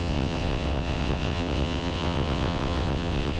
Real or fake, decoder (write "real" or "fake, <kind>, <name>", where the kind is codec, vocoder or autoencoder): fake, vocoder, WaveNeXt